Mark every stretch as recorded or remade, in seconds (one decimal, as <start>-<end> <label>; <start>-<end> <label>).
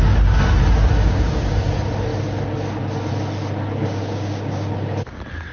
0.0-1.0 recorded; 1.0-1.7 remade; 1.7-3.8 recorded; 3.8-4.7 remade; 4.7-5.5 recorded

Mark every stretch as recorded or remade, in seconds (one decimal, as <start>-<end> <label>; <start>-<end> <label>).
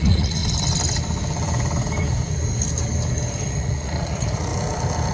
0.0-0.4 remade; 0.4-3.5 recorded; 3.5-4.5 remade; 4.5-5.1 recorded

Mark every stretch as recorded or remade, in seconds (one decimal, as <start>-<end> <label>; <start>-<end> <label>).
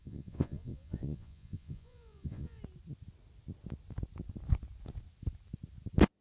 0.0-2.6 remade; 2.6-6.2 recorded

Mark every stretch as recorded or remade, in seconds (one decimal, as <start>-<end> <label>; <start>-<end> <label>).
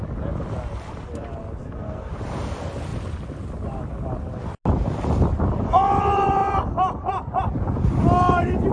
0.0-1.6 recorded; 1.6-2.1 remade; 2.1-8.7 recorded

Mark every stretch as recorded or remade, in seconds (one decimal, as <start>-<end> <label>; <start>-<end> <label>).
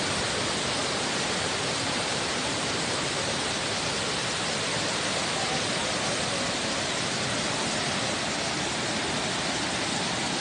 0.0-0.8 recorded; 0.8-4.0 remade; 4.0-10.4 recorded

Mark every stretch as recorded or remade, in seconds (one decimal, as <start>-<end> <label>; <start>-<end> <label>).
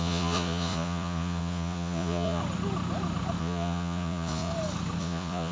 0.0-2.4 remade; 2.4-3.4 recorded; 3.4-4.5 remade; 4.5-5.0 recorded; 5.0-5.5 remade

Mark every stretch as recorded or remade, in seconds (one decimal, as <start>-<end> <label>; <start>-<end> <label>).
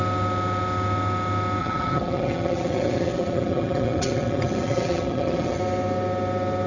0.0-1.6 recorded; 1.6-5.6 remade; 5.6-6.7 recorded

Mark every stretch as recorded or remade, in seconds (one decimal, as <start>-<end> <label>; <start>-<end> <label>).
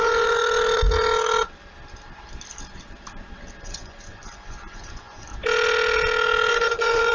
0.0-0.4 remade; 0.4-3.6 recorded; 3.6-5.3 remade; 5.3-6.5 recorded; 6.5-7.1 remade